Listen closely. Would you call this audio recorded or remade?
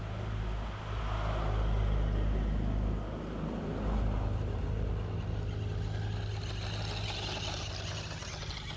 recorded